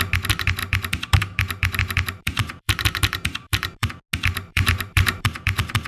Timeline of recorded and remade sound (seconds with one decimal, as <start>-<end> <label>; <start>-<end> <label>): 0.0-0.6 recorded; 0.6-3.9 remade; 3.9-4.5 recorded; 4.5-5.9 remade